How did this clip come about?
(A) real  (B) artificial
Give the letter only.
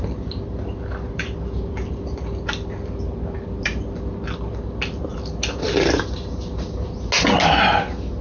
A